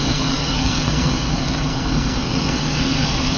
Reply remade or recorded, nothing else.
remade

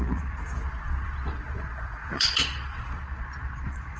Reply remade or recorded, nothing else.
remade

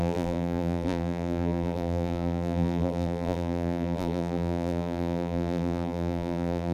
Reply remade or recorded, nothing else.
remade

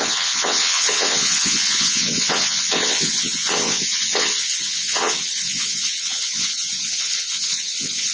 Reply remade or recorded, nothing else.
remade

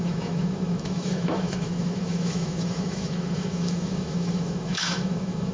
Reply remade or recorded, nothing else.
remade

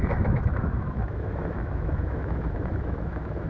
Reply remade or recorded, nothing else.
remade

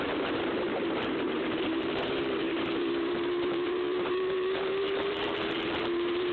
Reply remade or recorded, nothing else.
remade